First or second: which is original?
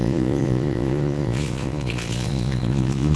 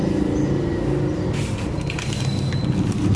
second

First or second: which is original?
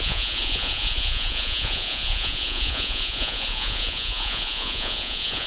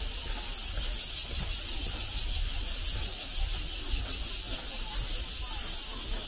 second